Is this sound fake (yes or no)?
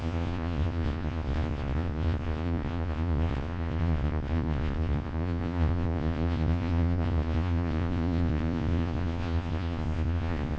yes